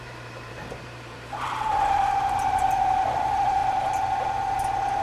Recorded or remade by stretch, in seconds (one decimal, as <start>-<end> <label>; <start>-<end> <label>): 0.0-3.6 remade; 3.6-5.0 recorded